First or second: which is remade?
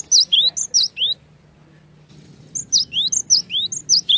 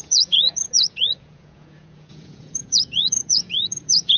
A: second